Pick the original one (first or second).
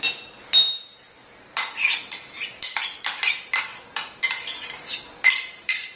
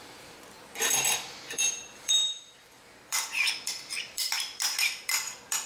first